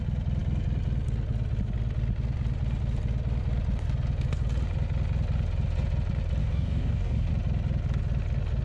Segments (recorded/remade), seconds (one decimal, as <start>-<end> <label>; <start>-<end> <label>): 0.0-6.4 recorded; 6.4-7.3 remade; 7.3-8.6 recorded